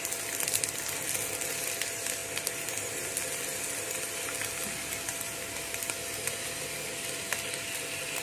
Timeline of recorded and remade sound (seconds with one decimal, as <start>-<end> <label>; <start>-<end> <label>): 0.0-8.2 recorded